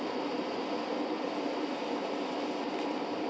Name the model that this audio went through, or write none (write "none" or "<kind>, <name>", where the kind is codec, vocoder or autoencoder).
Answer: none